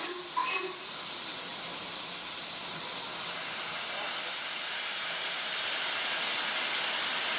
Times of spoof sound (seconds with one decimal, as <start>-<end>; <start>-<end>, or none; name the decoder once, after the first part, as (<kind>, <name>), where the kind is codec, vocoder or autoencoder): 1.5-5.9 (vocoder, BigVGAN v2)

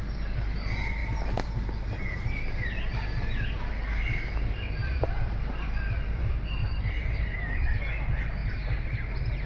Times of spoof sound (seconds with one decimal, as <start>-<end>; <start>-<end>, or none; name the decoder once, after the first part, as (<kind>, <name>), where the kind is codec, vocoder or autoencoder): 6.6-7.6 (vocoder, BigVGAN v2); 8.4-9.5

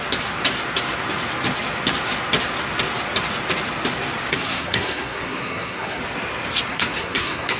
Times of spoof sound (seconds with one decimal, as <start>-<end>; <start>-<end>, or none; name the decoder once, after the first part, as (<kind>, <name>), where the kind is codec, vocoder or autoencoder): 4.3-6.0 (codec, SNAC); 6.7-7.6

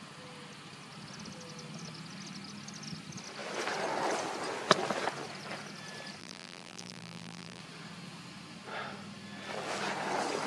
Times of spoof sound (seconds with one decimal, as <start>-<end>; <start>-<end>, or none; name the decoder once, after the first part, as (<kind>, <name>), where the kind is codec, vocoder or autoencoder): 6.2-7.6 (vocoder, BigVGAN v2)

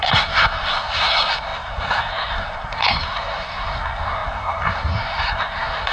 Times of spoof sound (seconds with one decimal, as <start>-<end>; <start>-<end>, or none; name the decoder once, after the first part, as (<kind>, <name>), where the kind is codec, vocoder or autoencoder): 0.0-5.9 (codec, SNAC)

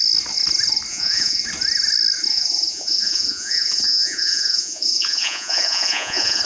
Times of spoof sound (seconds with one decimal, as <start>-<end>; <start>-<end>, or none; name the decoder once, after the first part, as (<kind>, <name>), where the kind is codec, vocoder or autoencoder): 0.9-1.4 (vocoder, Vocos); 2.3-6.4